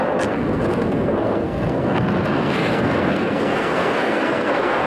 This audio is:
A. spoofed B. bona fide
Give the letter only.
A